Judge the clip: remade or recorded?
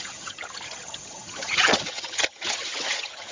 remade